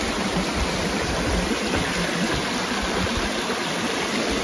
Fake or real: real